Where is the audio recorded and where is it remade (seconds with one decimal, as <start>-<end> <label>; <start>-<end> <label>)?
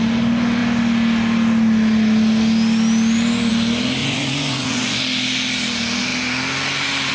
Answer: 0.0-4.0 recorded; 4.0-5.0 remade; 5.0-7.1 recorded